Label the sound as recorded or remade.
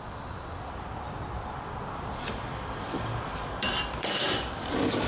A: remade